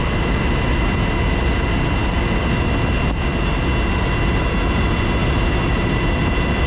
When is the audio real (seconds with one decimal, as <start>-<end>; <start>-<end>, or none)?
0.0-5.2; 6.0-6.7